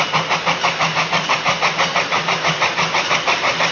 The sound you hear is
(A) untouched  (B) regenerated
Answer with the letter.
A